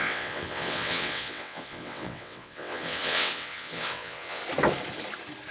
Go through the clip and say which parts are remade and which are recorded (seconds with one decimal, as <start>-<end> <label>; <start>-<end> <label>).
0.0-4.4 remade; 4.4-5.5 recorded

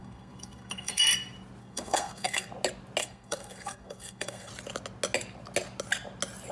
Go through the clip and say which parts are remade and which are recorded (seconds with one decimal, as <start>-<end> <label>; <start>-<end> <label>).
0.0-1.0 remade; 1.0-1.6 recorded; 1.6-2.5 remade; 2.5-3.0 recorded; 3.0-4.5 remade; 4.5-6.5 recorded

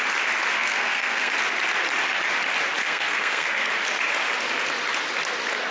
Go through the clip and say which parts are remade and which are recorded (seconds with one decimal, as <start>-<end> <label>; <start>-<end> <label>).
0.0-0.6 recorded; 0.6-1.3 remade; 1.3-2.8 recorded; 2.8-3.7 remade; 3.7-5.7 recorded

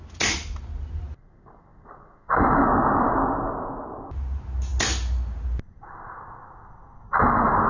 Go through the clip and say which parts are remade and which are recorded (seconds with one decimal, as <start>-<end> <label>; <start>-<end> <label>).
0.0-7.7 recorded

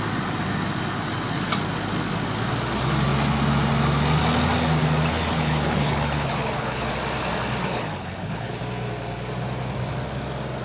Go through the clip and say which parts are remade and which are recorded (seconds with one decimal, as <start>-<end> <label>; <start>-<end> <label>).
0.0-5.3 recorded; 5.3-6.9 remade; 6.9-7.6 recorded; 7.6-8.6 remade; 8.6-10.6 recorded

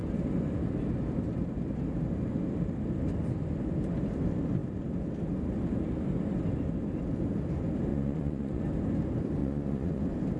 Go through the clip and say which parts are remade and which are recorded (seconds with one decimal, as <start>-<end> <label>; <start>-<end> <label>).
0.0-7.9 recorded; 7.9-8.6 remade; 8.6-9.4 recorded; 9.4-10.0 remade; 10.0-10.4 recorded